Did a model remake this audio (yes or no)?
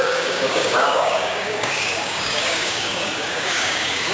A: yes